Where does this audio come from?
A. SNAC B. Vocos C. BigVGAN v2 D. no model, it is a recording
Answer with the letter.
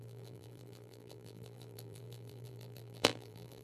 C